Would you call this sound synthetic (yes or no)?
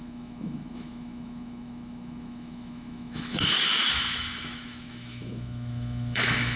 yes